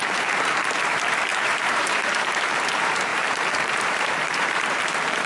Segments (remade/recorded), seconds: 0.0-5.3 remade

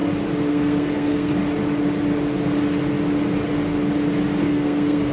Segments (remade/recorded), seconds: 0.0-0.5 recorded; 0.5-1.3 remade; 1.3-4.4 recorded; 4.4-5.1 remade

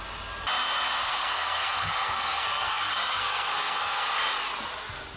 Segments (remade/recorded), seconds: 0.0-1.0 recorded; 1.0-4.1 remade; 4.1-5.2 recorded

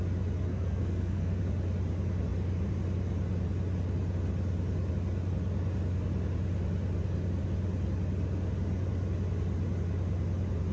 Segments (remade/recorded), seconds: 0.0-0.5 recorded; 0.5-1.4 remade; 1.4-10.7 recorded

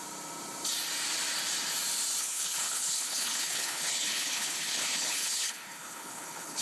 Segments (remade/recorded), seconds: 0.0-2.2 recorded; 2.2-6.6 remade

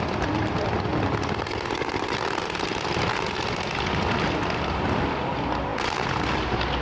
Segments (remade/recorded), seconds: 0.0-0.9 remade; 0.9-4.7 recorded; 4.7-5.7 remade; 5.7-6.8 recorded

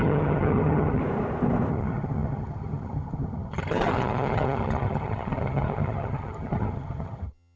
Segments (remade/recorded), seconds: 0.0-1.0 remade; 1.0-1.7 recorded; 1.7-7.6 remade

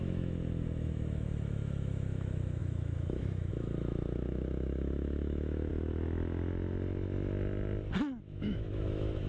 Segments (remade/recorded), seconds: 0.0-5.7 remade; 5.7-8.2 recorded; 8.2-9.3 remade